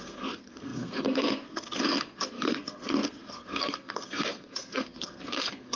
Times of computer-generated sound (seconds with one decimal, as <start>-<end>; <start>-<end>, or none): 0.0-5.8